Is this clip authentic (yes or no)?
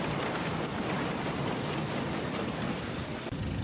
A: yes